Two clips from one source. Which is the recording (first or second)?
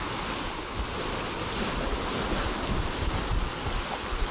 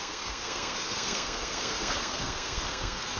first